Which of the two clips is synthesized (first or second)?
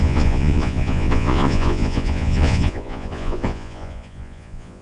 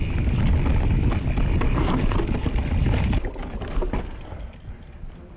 first